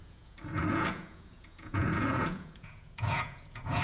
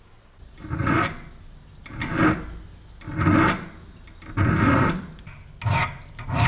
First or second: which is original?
second